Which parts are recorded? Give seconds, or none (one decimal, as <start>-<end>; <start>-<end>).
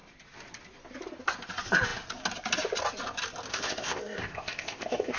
0.0-3.5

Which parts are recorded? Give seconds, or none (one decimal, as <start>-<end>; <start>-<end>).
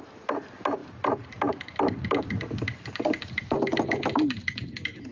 0.0-5.1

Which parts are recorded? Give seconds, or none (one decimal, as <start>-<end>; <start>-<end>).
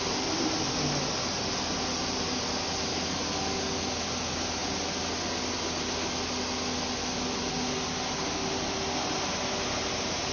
0.0-10.3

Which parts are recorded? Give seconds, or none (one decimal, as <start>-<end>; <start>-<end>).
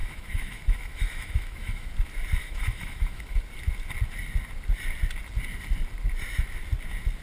1.9-2.4; 3.4-7.2